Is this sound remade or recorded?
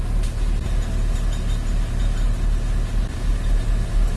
recorded